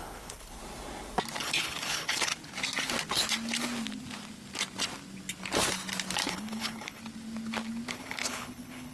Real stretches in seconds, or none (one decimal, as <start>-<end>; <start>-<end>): 0.6-1.4; 2.3-6.3; 7.0-7.9